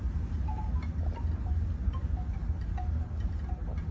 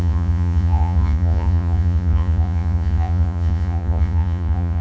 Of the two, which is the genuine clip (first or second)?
first